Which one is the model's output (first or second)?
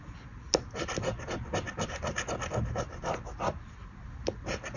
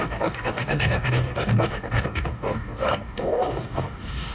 second